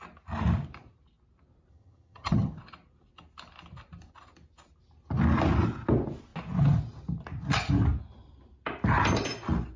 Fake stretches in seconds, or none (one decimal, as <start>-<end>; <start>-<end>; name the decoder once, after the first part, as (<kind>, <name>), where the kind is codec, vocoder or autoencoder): 1.7-2.6 (vocoder, HiFi-GAN)